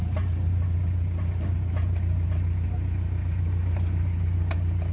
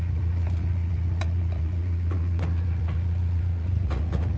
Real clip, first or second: first